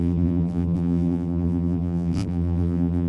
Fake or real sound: fake